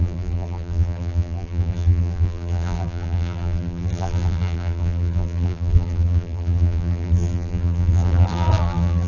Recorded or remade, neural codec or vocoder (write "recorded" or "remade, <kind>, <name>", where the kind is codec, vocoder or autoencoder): remade, vocoder, BigVGAN v2